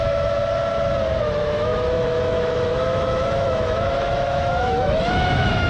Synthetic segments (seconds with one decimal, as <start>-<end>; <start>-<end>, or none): 0.0-0.4; 1.2-5.7